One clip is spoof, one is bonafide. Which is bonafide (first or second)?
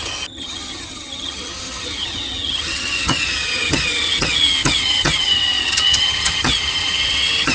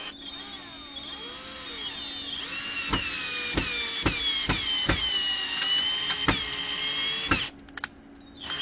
second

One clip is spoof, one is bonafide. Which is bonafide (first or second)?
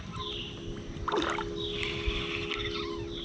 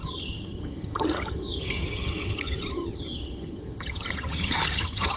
first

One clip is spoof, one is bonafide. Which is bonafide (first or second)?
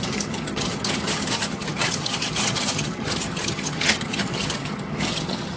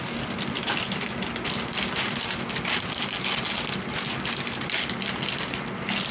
second